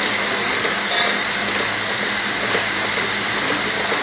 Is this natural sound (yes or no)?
yes